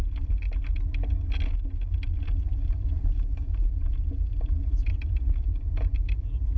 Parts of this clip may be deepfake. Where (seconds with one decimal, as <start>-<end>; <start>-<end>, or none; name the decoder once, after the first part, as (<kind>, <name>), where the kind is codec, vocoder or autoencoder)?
2.6-6.6 (vocoder, BigVGAN v2)